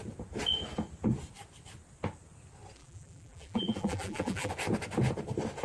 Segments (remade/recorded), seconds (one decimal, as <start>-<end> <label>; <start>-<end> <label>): 0.0-2.8 recorded; 2.8-4.5 remade; 4.5-5.6 recorded